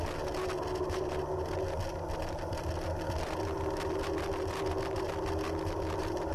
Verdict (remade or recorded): recorded